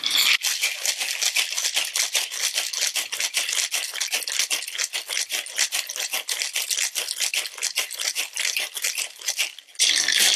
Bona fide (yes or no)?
yes